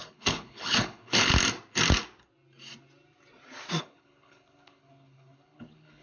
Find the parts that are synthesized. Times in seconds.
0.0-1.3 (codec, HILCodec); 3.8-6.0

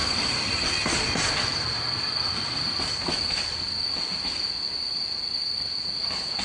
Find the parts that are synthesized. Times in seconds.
none

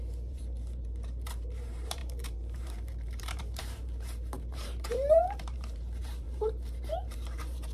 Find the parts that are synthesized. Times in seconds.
0.0-7.7 (vocoder, BigVGAN v2)

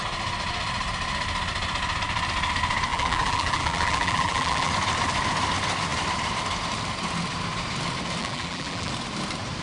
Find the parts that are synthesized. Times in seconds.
2.9-4.7 (vocoder, BigVGAN v2); 8.2-8.9

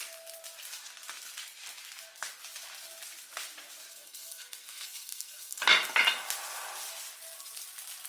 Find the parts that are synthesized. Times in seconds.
3.9-5.6 (codec, SNAC)

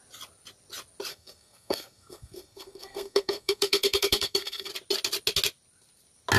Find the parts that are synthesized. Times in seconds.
1.1-4.7 (codec, SNAC)

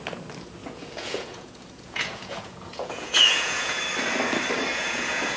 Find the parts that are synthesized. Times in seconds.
0.6-3.8 (vocoder, Vocos); 4.7-5.4